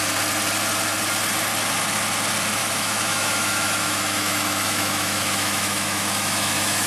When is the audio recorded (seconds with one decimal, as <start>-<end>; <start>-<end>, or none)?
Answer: 0.0-2.6